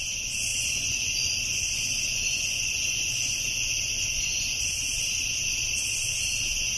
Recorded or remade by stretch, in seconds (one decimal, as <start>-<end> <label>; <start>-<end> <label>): 0.0-0.5 recorded; 0.5-4.6 remade; 4.6-6.8 recorded

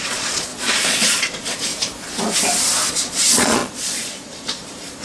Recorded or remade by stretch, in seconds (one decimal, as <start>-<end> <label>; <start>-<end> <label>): 0.0-1.7 remade; 1.7-2.9 recorded; 2.9-5.0 remade

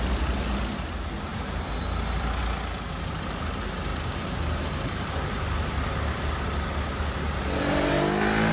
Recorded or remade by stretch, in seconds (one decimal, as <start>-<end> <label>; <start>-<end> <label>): 0.0-1.3 recorded; 1.3-2.4 remade; 2.4-3.9 recorded; 3.9-5.7 remade; 5.7-8.5 recorded

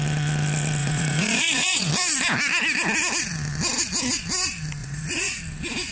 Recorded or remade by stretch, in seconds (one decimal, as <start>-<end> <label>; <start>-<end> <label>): 0.0-0.8 recorded; 0.8-1.9 remade; 1.9-4.8 recorded; 4.8-5.4 remade; 5.4-5.9 recorded

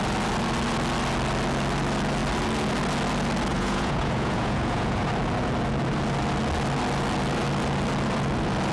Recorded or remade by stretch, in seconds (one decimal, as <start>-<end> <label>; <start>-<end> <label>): 0.0-3.5 recorded; 3.5-5.1 remade; 5.1-8.7 recorded

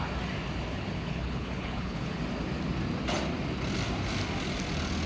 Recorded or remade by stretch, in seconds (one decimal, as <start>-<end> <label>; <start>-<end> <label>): 0.0-0.7 recorded; 0.7-2.2 remade; 2.2-5.1 recorded